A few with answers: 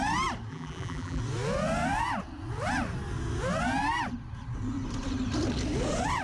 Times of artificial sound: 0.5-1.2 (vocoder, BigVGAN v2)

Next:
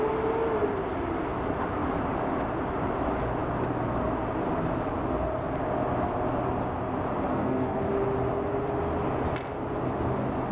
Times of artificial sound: 7.3-7.8 (codec, SNAC)

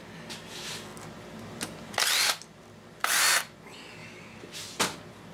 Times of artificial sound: 4.0-4.6 (vocoder, BigVGAN v2)

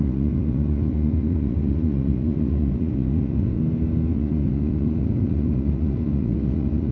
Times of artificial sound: 0.0-3.6 (vocoder, Vocos); 4.1-6.9